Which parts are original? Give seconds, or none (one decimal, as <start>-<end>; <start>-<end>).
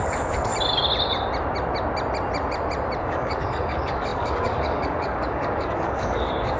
0.5-3.0